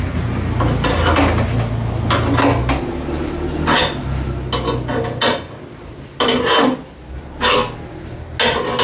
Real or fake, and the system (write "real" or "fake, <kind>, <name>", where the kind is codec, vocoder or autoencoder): real